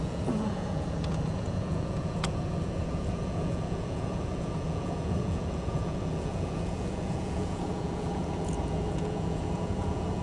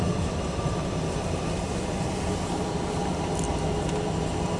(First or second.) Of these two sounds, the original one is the second